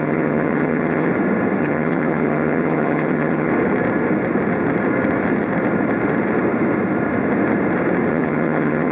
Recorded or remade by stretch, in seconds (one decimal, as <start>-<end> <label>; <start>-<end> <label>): 0.0-1.1 remade; 1.1-1.6 recorded; 1.6-3.5 remade; 3.5-8.1 recorded; 8.1-8.9 remade